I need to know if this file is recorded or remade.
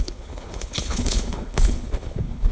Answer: remade